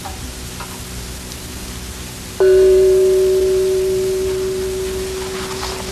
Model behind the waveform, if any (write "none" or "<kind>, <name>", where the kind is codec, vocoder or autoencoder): none